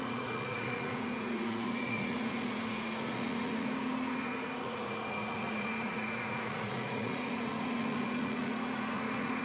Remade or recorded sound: remade